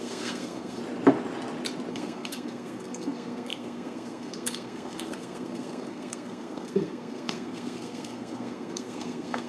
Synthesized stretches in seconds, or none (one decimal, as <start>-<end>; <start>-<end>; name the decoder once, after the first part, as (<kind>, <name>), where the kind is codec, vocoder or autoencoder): 0.0-0.8 (codec, SNAC); 1.9-9.5